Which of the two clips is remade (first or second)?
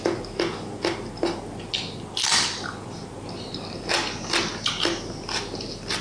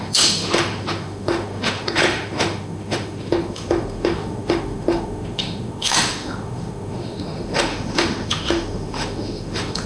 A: second